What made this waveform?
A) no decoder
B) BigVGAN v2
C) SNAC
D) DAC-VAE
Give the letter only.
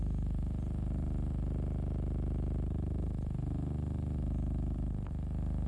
A